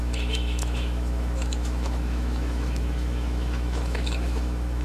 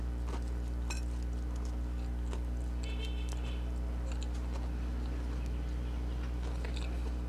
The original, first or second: second